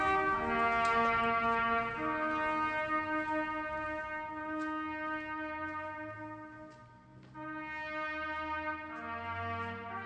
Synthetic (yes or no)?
no